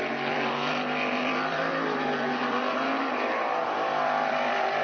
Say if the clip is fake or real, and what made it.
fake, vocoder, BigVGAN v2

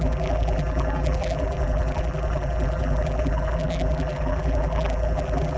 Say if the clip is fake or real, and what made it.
fake, vocoder, BigVGAN v2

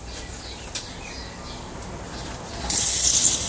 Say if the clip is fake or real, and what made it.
real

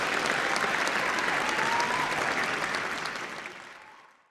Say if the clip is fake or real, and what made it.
real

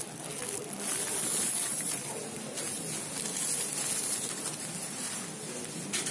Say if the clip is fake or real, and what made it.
real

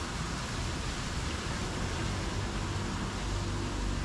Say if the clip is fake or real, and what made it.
real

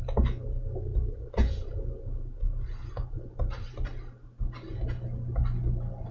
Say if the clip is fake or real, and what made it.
real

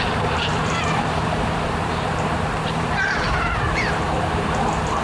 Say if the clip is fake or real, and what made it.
fake, vocoder, BigVGAN v2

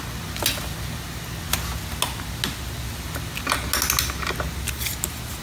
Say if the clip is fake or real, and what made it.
real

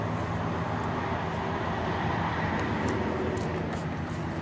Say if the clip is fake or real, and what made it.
real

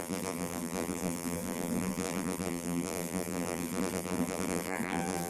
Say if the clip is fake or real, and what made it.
fake, vocoder, BigVGAN v2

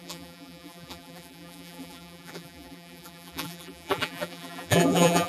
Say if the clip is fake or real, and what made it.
fake, vocoder, BigVGAN v2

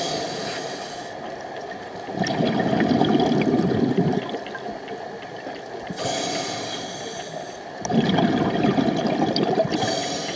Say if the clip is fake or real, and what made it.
real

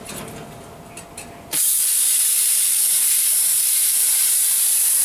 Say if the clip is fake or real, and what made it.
fake, vocoder, BigVGAN v2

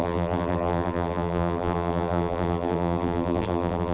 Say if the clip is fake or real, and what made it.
fake, vocoder, BigVGAN v2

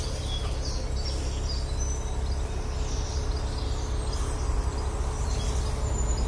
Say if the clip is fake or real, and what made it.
real